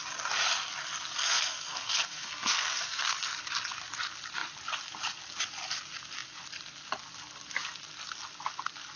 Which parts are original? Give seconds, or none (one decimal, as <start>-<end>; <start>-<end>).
0.0-1.2; 3.4-9.0